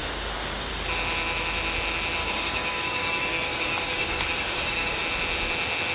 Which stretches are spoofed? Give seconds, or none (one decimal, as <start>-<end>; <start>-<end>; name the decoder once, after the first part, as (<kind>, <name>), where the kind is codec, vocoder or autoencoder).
0.0-0.7 (codec, DAC); 2.2-5.0